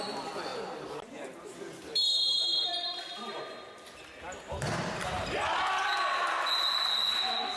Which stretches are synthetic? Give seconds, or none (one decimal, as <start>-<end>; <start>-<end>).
none